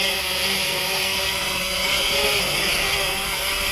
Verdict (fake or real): fake